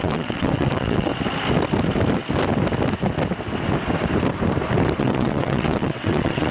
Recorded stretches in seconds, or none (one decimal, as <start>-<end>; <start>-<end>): 1.1-5.0